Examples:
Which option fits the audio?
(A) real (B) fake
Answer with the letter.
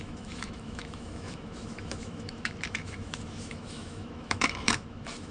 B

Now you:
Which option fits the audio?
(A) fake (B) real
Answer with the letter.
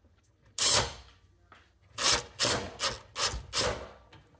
B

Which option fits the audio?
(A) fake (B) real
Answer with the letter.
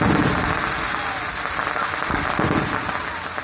B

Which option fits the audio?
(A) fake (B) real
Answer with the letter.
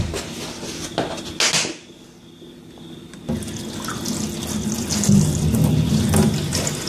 B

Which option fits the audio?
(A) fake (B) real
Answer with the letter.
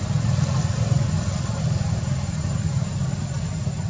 B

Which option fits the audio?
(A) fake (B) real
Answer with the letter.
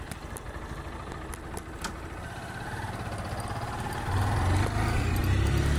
B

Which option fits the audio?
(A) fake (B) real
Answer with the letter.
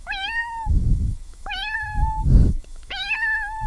A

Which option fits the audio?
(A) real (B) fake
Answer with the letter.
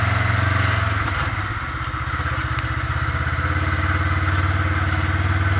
A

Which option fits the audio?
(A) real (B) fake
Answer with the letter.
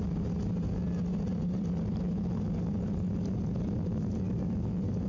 A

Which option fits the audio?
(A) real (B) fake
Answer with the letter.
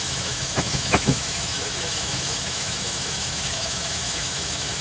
B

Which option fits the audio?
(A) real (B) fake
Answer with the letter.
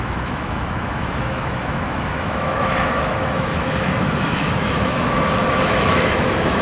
B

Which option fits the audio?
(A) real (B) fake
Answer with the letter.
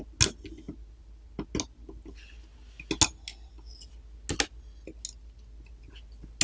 A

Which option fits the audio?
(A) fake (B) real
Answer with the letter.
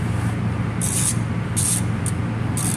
B